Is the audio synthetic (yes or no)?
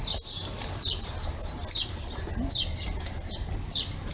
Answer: no